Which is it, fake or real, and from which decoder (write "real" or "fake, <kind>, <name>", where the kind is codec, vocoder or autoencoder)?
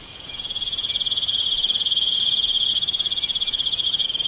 fake, vocoder, Vocos